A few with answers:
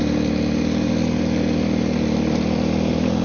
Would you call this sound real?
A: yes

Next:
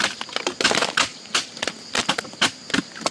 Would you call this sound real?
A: yes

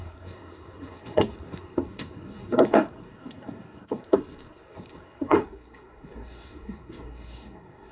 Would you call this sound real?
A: no